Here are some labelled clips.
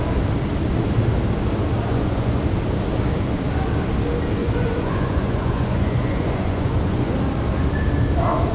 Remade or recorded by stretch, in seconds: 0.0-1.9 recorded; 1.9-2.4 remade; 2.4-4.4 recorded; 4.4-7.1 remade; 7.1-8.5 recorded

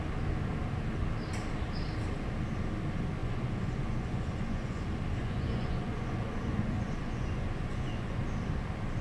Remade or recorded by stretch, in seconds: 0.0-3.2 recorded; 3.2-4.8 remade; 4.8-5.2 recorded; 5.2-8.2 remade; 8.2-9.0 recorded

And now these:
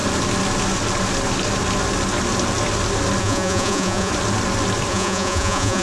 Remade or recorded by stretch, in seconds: 0.0-3.2 recorded; 3.2-4.1 remade; 4.1-4.9 recorded; 4.9-5.8 remade

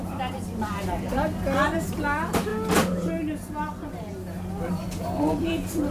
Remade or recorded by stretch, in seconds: 0.0-2.5 remade; 2.5-4.5 recorded; 4.5-5.9 remade

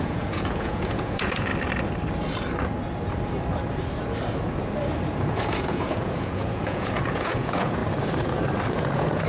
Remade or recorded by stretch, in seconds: 0.0-1.5 remade; 1.5-5.3 recorded; 5.3-7.8 remade; 7.8-8.7 recorded; 8.7-9.3 remade

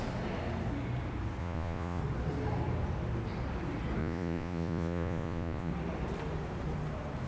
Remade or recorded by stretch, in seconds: 0.0-1.4 recorded; 1.4-2.0 remade; 2.0-4.0 recorded; 4.0-5.7 remade; 5.7-7.3 recorded

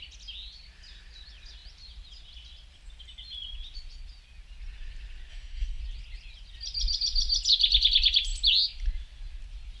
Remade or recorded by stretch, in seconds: 0.0-5.3 recorded; 5.3-5.8 remade; 5.8-9.8 recorded